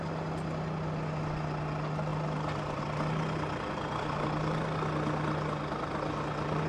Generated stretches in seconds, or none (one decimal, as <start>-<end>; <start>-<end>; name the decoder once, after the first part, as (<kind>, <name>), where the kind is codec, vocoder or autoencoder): none